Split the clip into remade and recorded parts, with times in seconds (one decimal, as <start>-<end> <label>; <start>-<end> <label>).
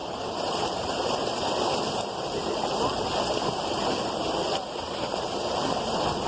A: 0.0-6.3 recorded